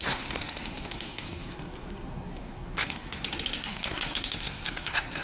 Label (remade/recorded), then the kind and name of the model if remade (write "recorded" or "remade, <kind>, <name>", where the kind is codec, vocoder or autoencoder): remade, codec, SNAC